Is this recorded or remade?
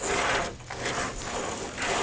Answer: recorded